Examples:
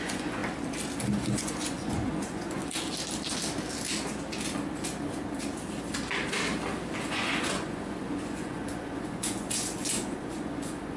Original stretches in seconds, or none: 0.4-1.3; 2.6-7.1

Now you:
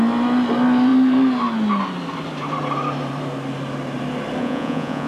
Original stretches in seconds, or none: 0.0-4.4

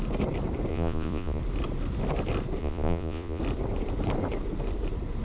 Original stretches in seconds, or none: 0.0-0.7; 1.4-2.6; 3.4-5.2

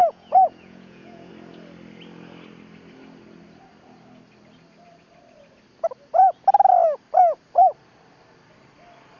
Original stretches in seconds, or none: 1.3-9.2

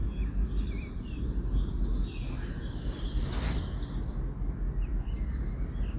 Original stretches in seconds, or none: 0.0-6.0

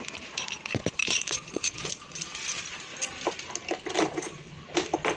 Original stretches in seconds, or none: 0.0-1.0; 2.4-5.2

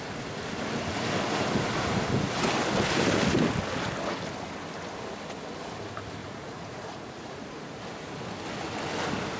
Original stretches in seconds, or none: 0.0-6.2; 7.8-9.4

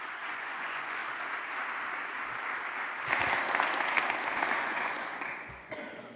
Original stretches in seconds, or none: 1.0-4.6